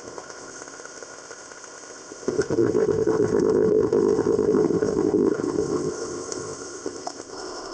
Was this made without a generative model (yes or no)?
no